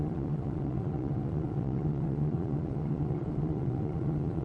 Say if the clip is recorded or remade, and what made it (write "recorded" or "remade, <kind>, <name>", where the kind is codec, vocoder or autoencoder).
remade, vocoder, Vocos